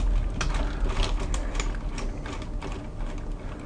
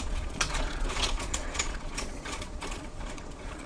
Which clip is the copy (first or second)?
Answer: second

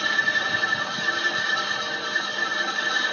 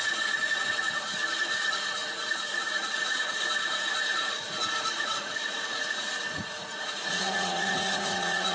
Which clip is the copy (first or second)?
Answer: second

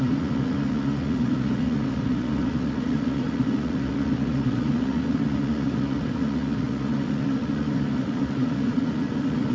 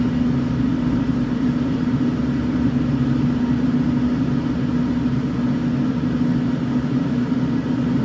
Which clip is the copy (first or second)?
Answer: first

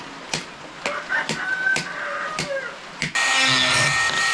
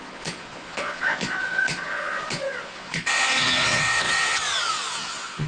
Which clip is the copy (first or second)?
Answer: second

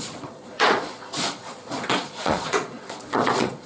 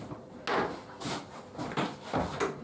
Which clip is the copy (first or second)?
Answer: first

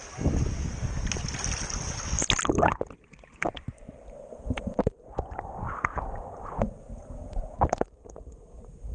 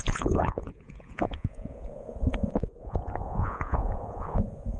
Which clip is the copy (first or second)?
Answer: second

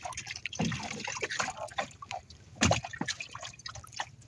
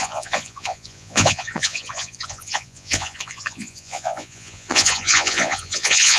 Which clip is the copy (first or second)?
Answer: second